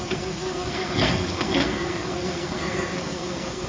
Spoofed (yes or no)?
yes